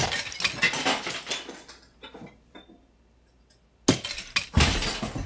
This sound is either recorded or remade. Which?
recorded